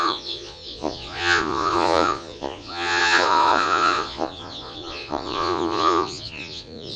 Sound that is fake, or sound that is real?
fake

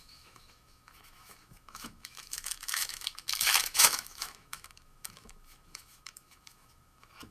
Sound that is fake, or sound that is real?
fake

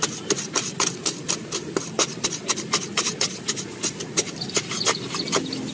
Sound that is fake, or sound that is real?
real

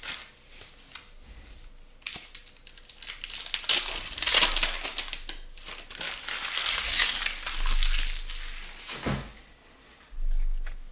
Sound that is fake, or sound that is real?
real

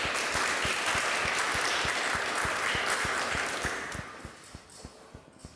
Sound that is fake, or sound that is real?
real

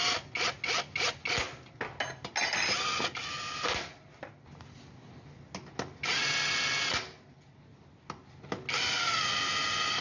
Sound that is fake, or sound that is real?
real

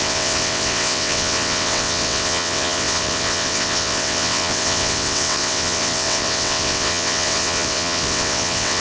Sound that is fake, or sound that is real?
fake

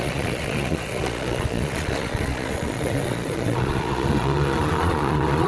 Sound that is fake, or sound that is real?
fake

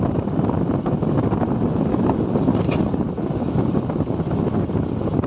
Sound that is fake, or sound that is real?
real